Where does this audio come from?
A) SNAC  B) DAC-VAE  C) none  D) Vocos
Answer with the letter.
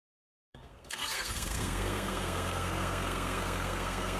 A